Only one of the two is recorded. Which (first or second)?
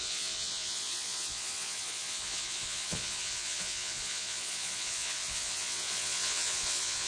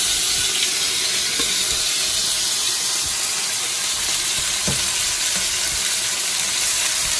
second